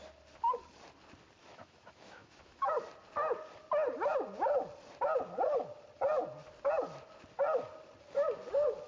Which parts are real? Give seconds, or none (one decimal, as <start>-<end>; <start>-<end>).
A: 0.0-1.4; 2.7-8.9

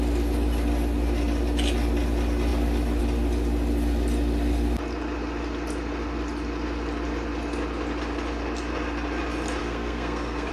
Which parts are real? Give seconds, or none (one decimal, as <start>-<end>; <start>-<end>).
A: 0.0-9.6

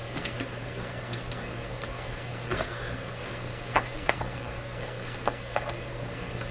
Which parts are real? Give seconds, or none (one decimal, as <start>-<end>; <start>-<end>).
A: none